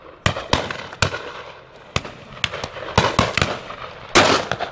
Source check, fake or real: real